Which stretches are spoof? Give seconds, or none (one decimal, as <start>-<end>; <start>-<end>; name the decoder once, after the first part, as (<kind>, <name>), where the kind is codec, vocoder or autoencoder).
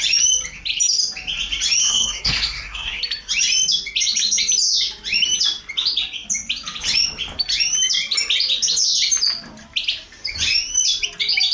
1.8-3.0 (codec, SNAC)